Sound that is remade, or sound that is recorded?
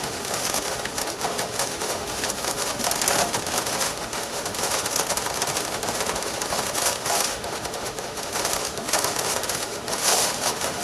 remade